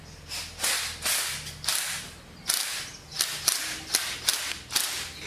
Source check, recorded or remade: recorded